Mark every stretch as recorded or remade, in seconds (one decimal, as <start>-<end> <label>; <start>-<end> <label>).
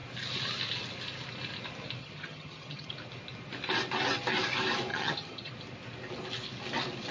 0.0-2.0 recorded; 2.0-2.9 remade; 2.9-4.9 recorded; 4.9-5.5 remade; 5.5-7.1 recorded